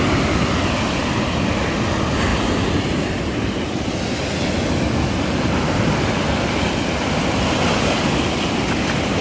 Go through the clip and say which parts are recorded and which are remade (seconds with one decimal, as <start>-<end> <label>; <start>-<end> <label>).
0.0-9.2 recorded